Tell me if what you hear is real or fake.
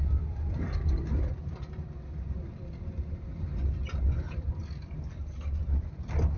real